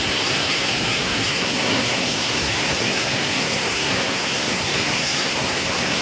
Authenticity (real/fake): fake